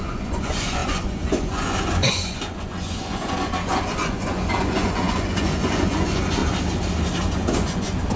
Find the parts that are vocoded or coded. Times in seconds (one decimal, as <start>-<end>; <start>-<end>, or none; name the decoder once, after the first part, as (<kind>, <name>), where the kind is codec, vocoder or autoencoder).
0.0-6.4 (vocoder, Vocos); 7.2-8.2

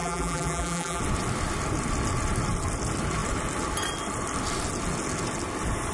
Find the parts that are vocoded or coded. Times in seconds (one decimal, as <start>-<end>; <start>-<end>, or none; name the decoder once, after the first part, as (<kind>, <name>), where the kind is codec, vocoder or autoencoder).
0.0-1.0 (vocoder, BigVGAN v2)

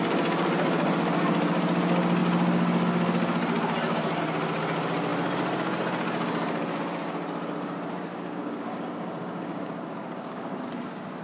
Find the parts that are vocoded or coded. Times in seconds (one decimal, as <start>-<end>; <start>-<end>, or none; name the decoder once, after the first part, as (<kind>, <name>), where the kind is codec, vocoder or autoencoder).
8.1-10.6 (codec, DAC)

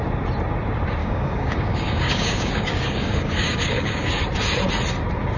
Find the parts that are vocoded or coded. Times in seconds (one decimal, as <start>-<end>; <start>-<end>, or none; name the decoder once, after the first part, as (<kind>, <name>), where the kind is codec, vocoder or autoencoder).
1.0-4.2 (codec, DAC)

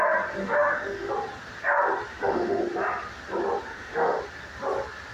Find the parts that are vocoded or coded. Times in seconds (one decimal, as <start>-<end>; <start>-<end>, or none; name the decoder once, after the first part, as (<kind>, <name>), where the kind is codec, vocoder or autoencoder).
0.4-1.1 (autoencoder, DAC-VAE); 2.1-2.6; 3.7-4.2

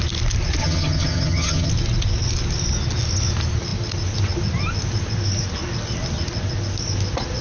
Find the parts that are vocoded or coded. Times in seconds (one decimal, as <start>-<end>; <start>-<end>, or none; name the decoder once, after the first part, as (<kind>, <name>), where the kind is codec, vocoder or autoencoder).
0.6-1.7 (vocoder, HiFi-GAN)